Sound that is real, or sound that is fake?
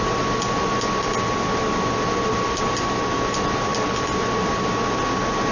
real